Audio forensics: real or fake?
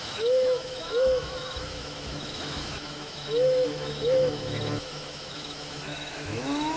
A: fake